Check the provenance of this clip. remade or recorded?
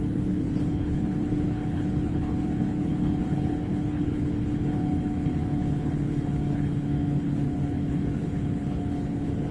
remade